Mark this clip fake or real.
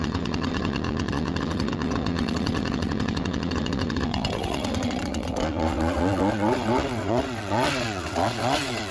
fake